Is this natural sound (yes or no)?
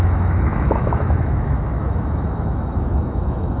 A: no